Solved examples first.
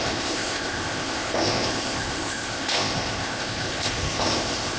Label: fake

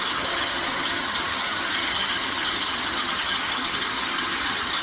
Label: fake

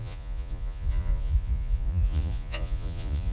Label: fake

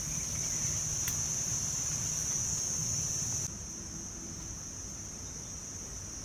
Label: real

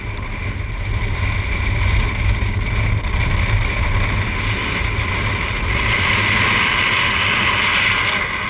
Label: real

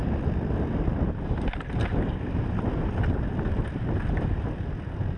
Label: real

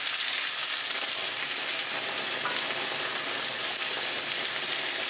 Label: real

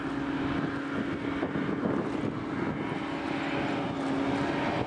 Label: real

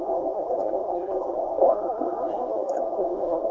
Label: fake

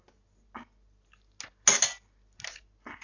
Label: real